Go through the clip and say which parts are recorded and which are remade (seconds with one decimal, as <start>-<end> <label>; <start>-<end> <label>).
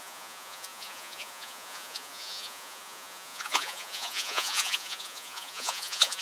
0.0-6.2 remade